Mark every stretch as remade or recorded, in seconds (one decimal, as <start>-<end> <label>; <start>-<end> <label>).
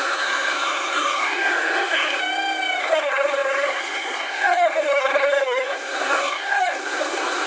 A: 0.0-2.2 remade; 2.2-2.8 recorded; 2.8-7.5 remade